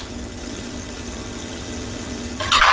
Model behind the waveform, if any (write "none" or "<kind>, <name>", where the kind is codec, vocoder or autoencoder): vocoder, HiFi-GAN